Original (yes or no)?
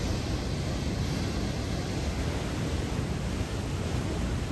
yes